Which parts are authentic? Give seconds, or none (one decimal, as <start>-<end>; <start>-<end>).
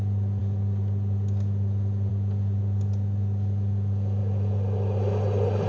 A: 0.0-5.7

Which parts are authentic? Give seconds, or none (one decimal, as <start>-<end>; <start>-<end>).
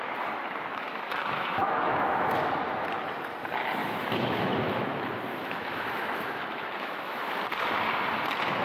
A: 0.0-0.7; 2.5-3.8; 4.8-5.3; 7.4-8.6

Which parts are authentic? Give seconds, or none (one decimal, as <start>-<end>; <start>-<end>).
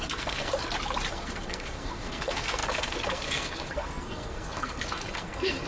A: 0.5-1.1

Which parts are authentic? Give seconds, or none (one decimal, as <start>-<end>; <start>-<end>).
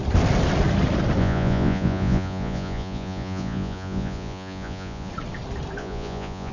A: 0.0-1.2; 5.1-5.8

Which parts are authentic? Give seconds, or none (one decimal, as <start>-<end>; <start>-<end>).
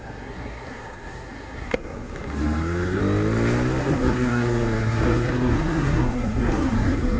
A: 3.0-3.8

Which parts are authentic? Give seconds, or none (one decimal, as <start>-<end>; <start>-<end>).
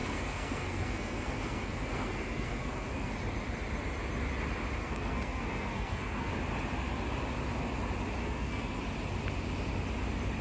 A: 3.1-4.8; 6.3-8.2; 8.8-10.4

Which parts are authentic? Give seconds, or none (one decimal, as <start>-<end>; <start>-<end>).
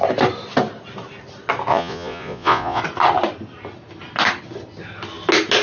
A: 0.0-1.7; 2.8-5.6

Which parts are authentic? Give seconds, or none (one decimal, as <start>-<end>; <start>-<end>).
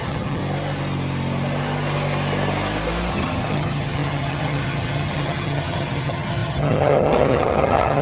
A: 0.4-3.1